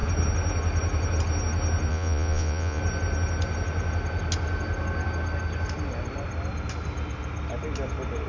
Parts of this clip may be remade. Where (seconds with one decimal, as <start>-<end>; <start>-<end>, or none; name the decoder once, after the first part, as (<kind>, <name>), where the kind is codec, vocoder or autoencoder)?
1.9-2.8 (vocoder, Vocos)